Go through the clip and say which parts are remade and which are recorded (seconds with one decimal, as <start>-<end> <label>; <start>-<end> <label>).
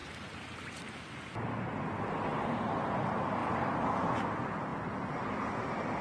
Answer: 0.0-3.4 recorded; 3.4-3.9 remade; 3.9-6.0 recorded